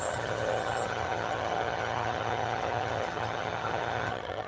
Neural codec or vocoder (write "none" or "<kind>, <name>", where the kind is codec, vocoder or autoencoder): vocoder, HiFi-GAN